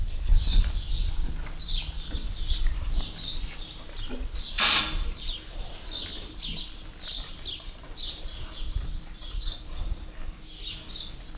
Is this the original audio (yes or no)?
yes